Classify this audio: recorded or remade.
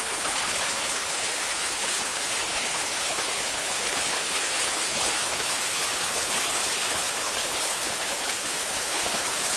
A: remade